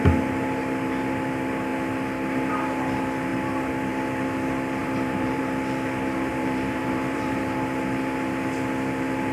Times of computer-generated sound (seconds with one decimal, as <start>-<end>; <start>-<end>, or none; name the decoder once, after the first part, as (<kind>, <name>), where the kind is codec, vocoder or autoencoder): 4.8-5.4 (vocoder, BigVGAN v2); 6.3-7.4